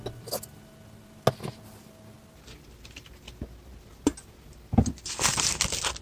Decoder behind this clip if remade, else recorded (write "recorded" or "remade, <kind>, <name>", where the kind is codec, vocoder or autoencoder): recorded